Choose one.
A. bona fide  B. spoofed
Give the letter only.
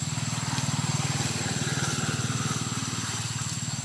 A